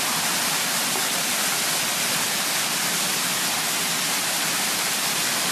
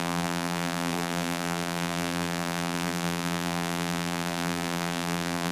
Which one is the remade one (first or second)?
second